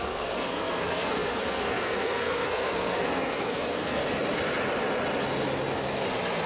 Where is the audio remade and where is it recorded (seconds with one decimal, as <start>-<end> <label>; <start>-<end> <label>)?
0.0-4.0 remade; 4.0-6.5 recorded